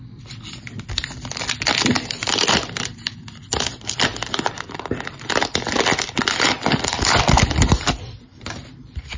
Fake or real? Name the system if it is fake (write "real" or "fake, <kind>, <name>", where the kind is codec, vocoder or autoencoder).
fake, vocoder, BigVGAN v2